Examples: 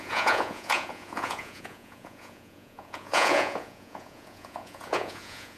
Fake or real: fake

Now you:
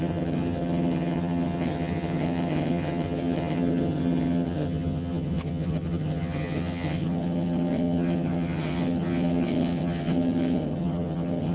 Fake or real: fake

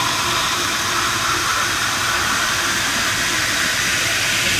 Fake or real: fake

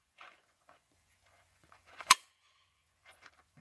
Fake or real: fake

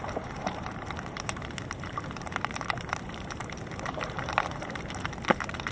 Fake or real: fake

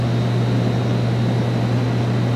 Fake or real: real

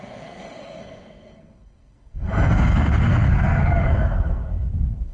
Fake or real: fake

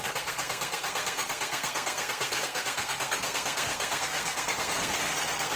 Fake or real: fake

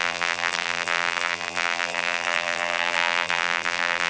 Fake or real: fake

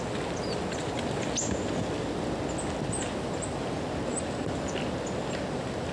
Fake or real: real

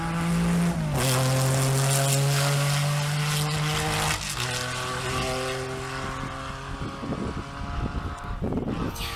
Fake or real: real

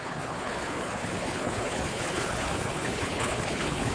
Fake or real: fake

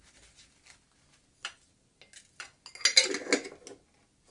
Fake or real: real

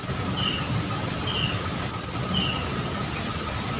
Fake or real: real